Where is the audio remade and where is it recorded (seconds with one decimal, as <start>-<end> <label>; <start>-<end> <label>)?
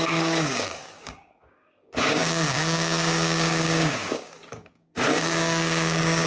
0.0-6.3 remade